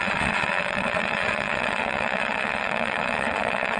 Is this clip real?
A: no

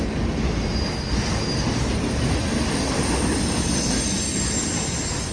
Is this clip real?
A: yes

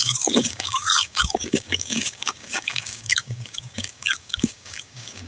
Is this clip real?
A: no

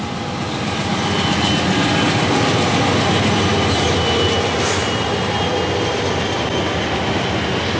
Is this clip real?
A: yes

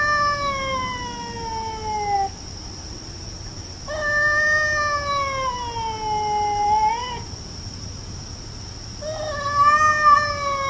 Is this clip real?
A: yes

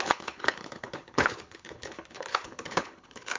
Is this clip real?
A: no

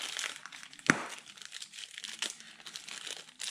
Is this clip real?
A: yes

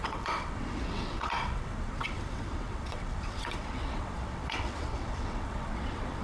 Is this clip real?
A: no